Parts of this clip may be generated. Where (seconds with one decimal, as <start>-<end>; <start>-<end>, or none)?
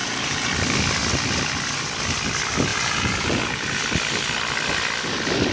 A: 0.0-0.5; 2.7-3.8